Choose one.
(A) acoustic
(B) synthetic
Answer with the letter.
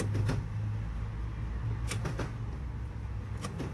A